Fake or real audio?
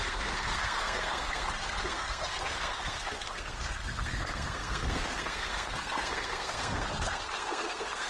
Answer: fake